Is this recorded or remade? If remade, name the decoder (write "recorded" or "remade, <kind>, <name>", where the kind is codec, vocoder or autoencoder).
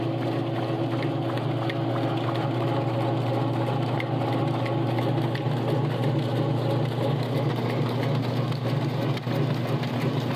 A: recorded